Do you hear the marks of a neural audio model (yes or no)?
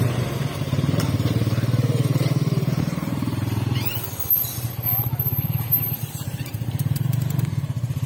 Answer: yes